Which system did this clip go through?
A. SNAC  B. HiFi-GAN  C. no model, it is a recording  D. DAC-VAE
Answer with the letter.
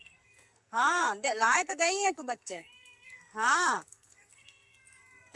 A